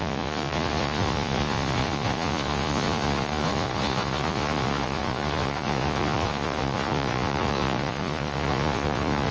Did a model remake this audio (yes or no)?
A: yes